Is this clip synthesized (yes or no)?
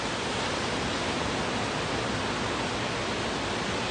no